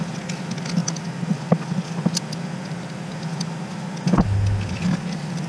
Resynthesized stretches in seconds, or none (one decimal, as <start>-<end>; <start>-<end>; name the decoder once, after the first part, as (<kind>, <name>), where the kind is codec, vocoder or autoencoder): none